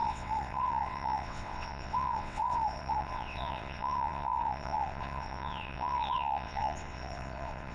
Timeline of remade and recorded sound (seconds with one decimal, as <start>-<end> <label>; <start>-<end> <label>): 0.0-7.7 remade